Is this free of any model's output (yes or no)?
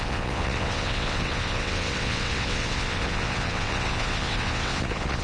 no